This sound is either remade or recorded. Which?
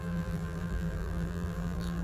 remade